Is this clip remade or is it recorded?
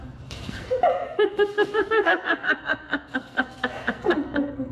remade